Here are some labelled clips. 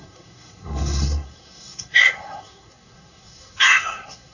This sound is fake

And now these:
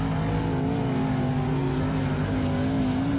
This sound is real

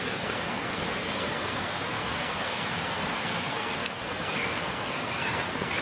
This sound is fake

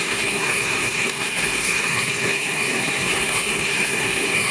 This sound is fake